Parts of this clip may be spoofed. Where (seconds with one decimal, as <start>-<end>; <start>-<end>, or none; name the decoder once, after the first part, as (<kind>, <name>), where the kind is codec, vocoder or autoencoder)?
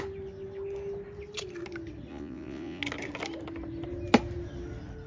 2.1-2.8 (vocoder, Vocos)